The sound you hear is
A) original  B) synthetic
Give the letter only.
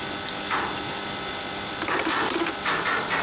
A